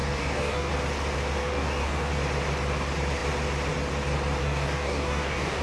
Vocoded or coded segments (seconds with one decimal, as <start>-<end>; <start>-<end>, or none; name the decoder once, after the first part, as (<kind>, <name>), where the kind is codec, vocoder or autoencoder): 0.0-0.7 (codec, DAC); 1.4-2.1; 4.4-5.6